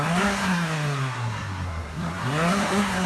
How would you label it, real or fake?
fake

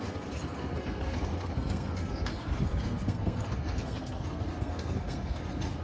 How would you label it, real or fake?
fake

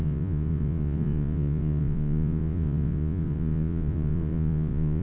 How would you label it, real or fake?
fake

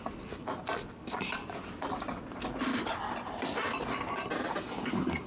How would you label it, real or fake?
real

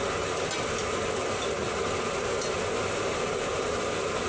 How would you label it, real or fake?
real